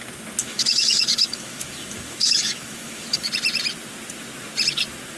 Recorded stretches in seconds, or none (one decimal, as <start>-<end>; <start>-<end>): 0.0-0.4; 3.3-5.2